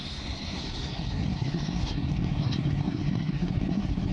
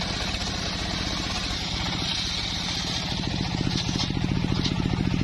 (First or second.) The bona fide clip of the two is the second